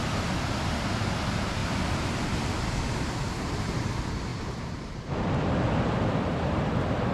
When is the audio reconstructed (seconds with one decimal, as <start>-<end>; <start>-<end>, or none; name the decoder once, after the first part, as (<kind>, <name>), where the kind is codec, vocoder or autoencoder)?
none